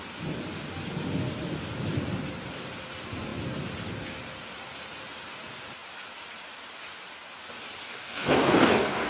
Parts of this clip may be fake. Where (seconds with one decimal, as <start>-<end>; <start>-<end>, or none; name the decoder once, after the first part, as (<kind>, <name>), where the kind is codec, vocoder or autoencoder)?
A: 7.9-9.1 (codec, DAC)